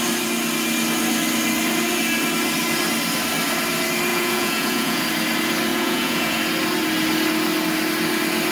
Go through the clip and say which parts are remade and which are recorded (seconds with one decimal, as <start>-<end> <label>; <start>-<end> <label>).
0.0-4.1 recorded; 4.1-5.0 remade; 5.0-5.7 recorded; 5.7-6.4 remade; 6.4-8.5 recorded